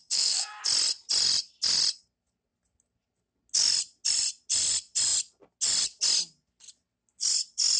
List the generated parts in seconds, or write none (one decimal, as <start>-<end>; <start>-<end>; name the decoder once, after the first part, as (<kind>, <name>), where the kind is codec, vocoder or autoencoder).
0.0-0.6 (codec, SNAC)